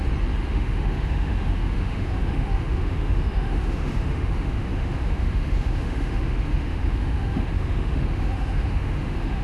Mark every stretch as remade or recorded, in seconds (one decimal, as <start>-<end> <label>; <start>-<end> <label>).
0.0-0.5 recorded; 0.5-9.4 remade